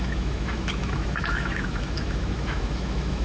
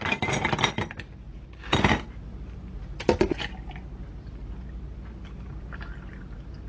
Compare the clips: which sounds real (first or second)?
second